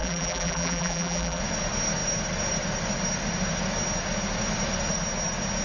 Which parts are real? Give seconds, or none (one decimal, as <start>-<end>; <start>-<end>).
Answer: 1.4-5.6